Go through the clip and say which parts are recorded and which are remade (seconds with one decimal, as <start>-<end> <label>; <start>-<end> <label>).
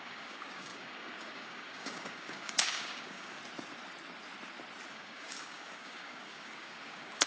0.0-3.4 remade; 3.4-4.9 recorded; 4.9-7.3 remade